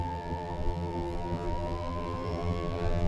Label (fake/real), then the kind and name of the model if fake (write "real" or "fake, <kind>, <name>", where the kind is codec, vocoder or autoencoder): fake, vocoder, BigVGAN v2